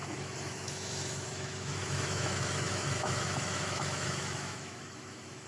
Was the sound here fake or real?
fake